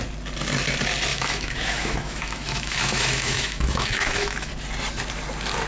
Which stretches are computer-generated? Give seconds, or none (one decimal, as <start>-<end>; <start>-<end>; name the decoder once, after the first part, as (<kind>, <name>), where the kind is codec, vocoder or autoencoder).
1.1-4.5 (autoencoder, DAC-VAE)